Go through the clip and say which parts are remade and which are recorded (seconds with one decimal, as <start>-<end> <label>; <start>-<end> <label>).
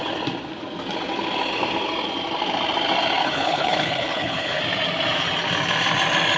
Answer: 0.0-3.2 recorded; 3.2-4.6 remade; 4.6-6.4 recorded